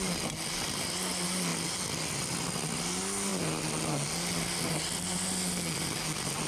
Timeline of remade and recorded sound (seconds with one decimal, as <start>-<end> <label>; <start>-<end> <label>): 0.0-6.5 recorded